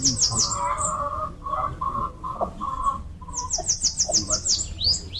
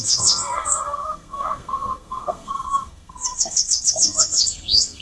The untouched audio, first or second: first